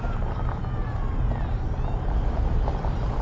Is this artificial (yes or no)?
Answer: no